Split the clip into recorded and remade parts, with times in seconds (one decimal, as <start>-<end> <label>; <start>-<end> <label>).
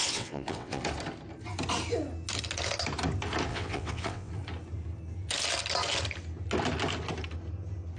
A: 0.0-0.8 remade; 0.8-3.5 recorded; 3.5-4.3 remade; 4.3-8.0 recorded